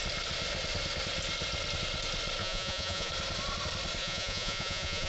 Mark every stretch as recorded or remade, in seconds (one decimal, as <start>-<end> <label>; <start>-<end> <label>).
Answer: 0.0-2.4 recorded; 2.4-3.1 remade; 3.1-4.0 recorded; 4.0-5.1 remade